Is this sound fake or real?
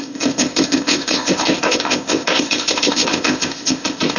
fake